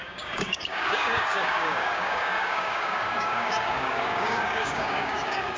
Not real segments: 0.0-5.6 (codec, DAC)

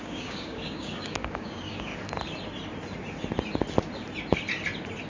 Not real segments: 0.0-1.9 (codec, DAC)